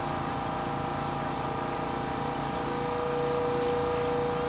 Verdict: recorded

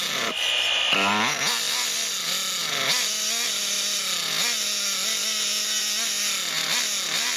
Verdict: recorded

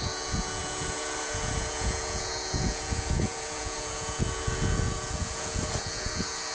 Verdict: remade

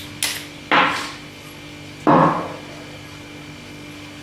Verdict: recorded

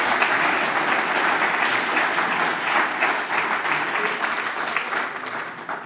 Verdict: recorded